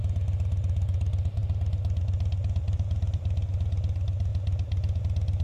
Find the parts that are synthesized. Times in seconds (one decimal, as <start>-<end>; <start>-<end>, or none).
none